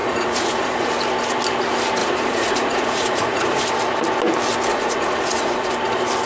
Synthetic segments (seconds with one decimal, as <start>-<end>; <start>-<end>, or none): 0.0-0.9; 2.0-3.6; 4.7-5.7

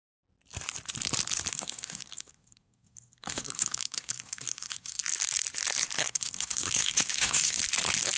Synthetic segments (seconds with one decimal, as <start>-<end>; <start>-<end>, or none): 1.5-5.0; 6.0-7.6

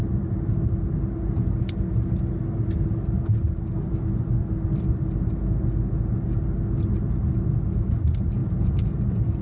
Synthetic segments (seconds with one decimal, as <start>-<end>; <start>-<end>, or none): none

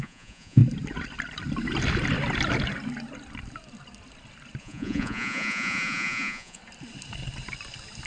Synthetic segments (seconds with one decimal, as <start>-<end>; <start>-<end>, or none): 0.0-0.6; 4.6-6.6

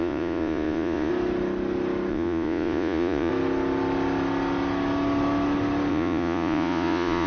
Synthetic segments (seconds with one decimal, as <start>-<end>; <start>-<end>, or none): 0.0-1.1; 2.1-3.3; 5.9-7.3

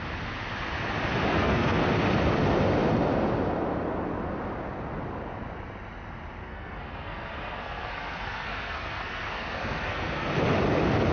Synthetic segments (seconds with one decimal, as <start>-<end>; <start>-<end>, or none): 1.3-1.8; 6.4-10.3

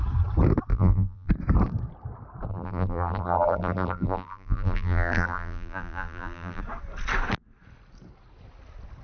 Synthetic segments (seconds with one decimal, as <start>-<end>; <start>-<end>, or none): 0.7-1.3; 2.5-6.6